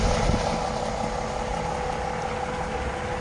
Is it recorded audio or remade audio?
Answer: recorded